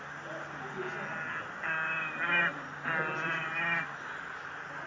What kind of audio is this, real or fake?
real